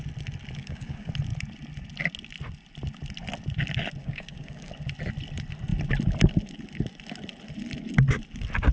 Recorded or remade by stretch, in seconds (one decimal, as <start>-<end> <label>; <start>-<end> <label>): 0.0-0.6 recorded; 0.6-1.1 remade; 1.1-4.0 recorded; 4.0-4.7 remade; 4.7-8.7 recorded